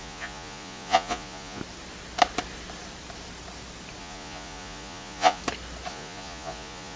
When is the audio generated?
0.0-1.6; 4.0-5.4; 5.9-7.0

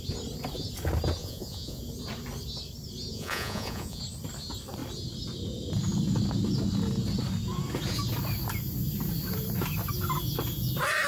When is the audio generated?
1.2-1.8; 3.1-4.0

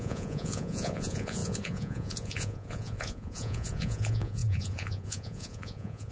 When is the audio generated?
0.0-6.1

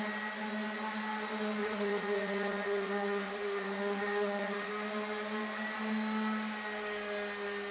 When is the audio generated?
1.6-4.7